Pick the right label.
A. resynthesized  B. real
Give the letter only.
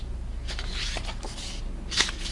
B